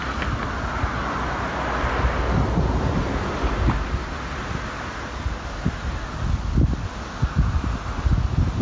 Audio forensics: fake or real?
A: real